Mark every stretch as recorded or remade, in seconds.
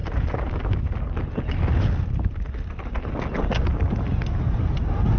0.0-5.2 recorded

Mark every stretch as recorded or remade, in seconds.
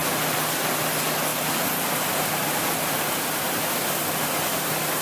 0.0-5.0 recorded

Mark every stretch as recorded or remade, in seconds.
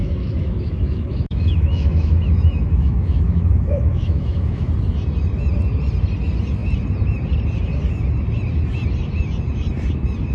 0.0-4.7 remade; 4.7-10.3 recorded